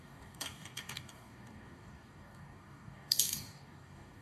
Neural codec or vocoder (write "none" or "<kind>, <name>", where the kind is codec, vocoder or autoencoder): codec, DAC